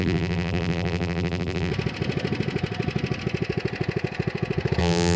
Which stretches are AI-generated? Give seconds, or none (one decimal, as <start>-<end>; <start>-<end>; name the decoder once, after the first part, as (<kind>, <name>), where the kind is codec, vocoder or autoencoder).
0.0-1.7 (vocoder, BigVGAN v2); 4.8-5.2